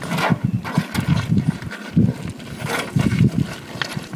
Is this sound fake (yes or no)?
no